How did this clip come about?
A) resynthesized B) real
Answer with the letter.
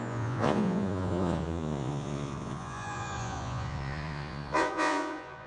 A